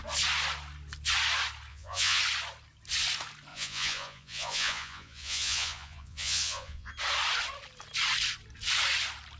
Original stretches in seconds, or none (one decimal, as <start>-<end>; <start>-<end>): 0.0-1.7; 2.2-3.5; 6.9-9.4